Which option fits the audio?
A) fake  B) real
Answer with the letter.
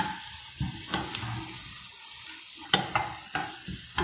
B